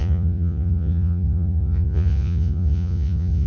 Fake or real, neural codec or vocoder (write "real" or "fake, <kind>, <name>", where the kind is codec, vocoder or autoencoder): fake, vocoder, Vocos